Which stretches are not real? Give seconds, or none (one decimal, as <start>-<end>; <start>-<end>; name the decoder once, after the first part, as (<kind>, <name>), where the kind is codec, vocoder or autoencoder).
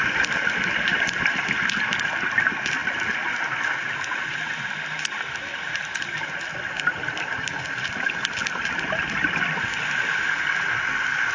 none